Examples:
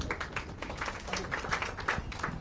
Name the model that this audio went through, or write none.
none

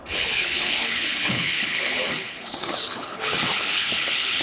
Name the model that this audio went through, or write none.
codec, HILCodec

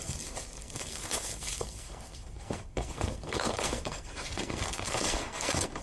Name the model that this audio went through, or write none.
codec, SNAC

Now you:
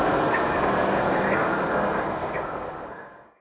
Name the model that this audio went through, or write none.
codec, SNAC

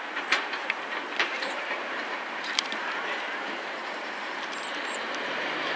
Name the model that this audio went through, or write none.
vocoder, BigVGAN v2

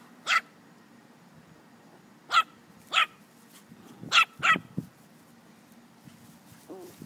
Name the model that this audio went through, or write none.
none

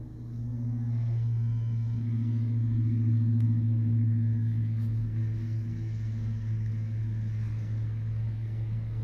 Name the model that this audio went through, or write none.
codec, SNAC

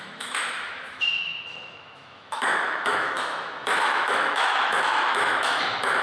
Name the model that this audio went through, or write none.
autoencoder, DAC-VAE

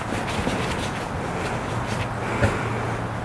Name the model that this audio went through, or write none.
none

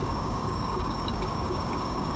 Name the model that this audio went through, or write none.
codec, DAC